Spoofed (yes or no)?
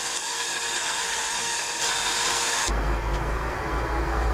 yes